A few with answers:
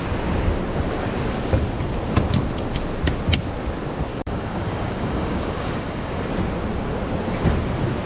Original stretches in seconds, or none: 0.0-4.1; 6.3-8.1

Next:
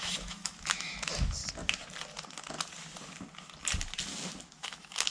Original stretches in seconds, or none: 1.4-4.5